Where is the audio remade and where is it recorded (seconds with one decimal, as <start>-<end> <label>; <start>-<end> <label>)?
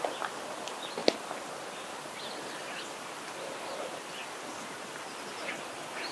0.0-6.1 recorded